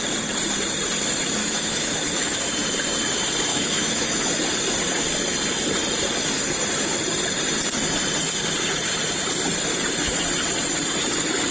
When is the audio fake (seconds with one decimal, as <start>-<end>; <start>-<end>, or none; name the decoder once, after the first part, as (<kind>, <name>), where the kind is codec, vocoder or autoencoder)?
1.4-2.4 (autoencoder, DAC-VAE); 3.5-4.3